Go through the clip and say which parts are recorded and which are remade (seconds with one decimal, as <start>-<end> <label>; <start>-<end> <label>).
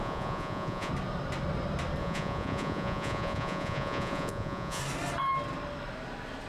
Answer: 0.0-0.9 remade; 0.9-2.0 recorded; 2.0-4.8 remade; 4.8-6.5 recorded